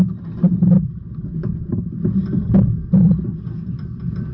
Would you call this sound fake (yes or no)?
no